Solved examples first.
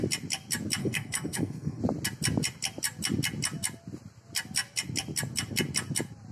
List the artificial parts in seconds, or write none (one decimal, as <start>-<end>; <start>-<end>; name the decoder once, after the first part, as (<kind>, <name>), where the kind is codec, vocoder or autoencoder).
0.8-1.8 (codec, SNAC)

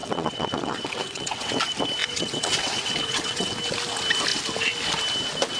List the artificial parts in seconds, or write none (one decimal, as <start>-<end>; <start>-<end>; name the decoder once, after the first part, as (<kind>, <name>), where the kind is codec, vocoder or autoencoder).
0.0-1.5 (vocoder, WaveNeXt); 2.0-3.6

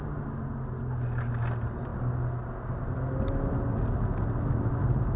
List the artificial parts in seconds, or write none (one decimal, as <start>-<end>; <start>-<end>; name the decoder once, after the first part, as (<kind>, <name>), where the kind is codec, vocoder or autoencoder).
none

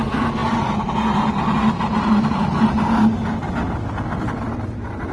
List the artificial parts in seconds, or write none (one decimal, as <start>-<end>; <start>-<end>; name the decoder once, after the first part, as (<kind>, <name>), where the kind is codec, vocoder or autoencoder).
none

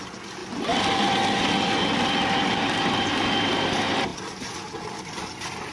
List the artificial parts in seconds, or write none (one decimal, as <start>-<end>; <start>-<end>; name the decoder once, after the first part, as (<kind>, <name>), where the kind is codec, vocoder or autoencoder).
2.2-3.5 (vocoder, BigVGAN v2)